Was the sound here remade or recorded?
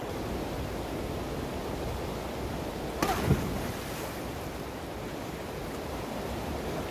recorded